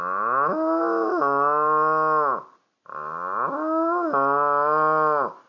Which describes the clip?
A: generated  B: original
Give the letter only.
B